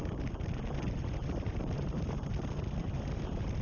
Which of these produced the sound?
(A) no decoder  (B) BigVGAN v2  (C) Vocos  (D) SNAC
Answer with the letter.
A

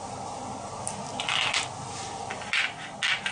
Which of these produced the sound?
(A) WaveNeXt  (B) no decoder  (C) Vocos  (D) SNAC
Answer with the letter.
B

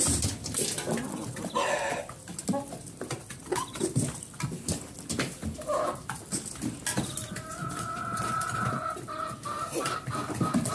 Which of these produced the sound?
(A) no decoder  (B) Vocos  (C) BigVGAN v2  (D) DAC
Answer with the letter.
A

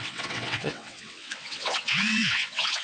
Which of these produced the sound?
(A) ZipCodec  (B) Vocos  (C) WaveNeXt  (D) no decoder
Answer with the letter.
C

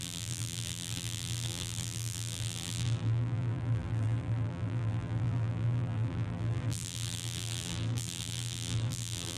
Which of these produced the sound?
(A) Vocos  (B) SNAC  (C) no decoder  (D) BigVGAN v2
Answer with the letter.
D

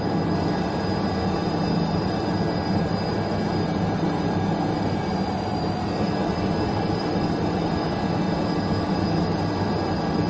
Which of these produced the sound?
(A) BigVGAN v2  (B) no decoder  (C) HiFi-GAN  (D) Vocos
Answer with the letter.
B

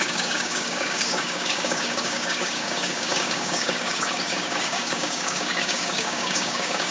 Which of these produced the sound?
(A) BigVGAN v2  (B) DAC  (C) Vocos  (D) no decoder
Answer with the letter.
B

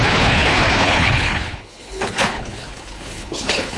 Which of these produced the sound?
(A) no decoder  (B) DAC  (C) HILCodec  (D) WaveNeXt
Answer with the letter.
C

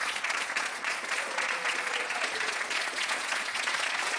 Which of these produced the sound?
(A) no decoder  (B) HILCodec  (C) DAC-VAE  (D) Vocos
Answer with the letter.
D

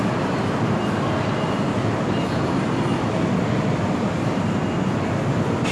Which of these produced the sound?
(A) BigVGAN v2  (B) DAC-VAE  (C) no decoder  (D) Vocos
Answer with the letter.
A